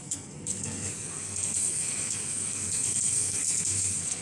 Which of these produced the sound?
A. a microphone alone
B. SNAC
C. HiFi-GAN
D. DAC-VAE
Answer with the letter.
B